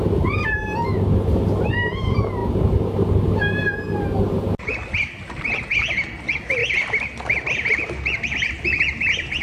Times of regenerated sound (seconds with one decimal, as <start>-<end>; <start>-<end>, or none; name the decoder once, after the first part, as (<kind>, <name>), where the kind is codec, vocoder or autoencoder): 6.6-8.5 (vocoder, BigVGAN v2)